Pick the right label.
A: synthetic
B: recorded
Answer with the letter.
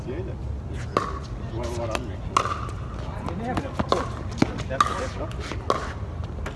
B